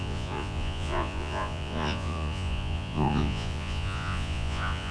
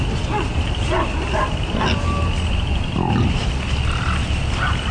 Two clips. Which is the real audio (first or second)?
second